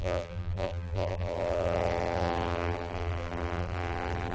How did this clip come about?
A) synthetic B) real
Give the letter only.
A